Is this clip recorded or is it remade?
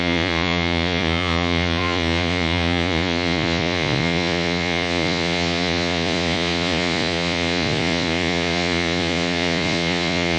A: remade